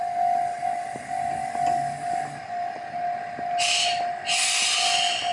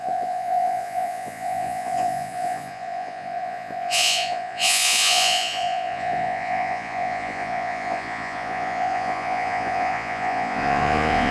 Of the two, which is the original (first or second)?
first